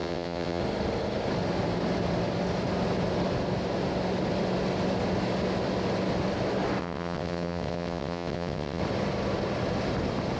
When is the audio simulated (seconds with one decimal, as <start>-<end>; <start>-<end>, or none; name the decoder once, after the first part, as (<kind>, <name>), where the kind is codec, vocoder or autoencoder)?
0.0-0.6 (vocoder, WaveNeXt); 6.8-8.8